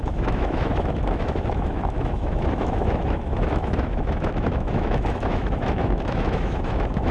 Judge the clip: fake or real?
fake